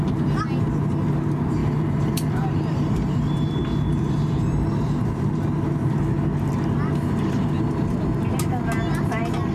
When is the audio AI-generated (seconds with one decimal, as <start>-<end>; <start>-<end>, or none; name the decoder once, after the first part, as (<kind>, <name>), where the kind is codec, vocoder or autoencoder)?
1.6-6.0 (vocoder, BigVGAN v2)